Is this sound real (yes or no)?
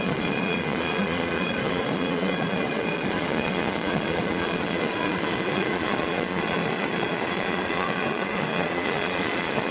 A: no